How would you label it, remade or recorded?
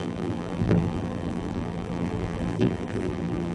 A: remade